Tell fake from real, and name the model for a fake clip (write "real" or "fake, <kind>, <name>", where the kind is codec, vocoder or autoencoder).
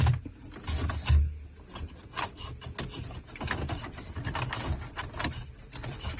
fake, vocoder, BigVGAN v2